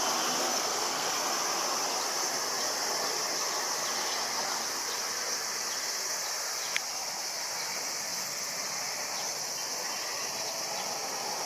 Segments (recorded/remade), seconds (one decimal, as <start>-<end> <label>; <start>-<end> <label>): 0.0-0.4 recorded; 0.4-1.1 remade; 1.1-11.5 recorded